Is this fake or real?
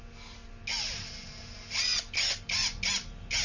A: real